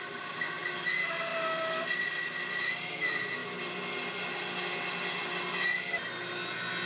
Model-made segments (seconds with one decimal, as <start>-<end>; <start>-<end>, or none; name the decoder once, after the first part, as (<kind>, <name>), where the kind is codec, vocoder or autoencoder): none